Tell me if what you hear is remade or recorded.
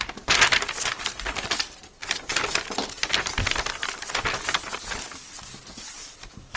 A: recorded